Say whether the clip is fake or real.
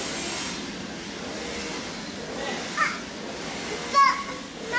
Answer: real